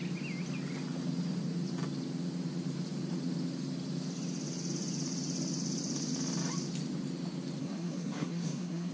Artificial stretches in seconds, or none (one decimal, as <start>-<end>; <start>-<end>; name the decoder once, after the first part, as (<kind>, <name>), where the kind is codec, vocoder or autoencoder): 7.6-8.9 (codec, SNAC)